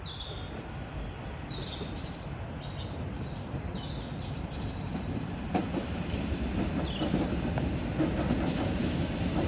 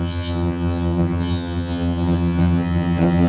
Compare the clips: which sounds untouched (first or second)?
first